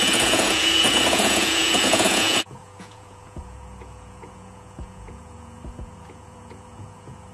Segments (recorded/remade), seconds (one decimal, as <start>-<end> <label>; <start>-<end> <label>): 0.0-7.3 remade